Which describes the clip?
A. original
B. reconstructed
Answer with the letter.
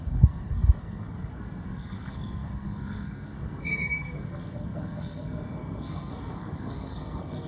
B